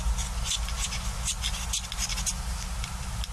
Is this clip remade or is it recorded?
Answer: recorded